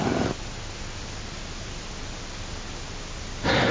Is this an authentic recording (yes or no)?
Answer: yes